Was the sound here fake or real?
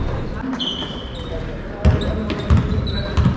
real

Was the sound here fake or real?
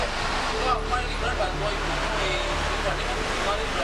real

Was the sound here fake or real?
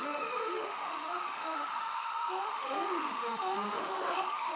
fake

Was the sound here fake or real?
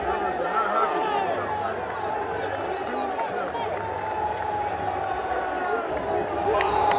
real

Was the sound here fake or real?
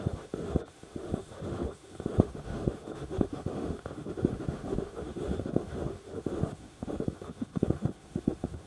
fake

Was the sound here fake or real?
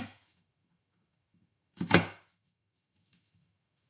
fake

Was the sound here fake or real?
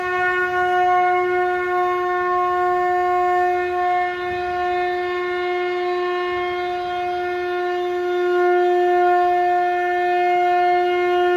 real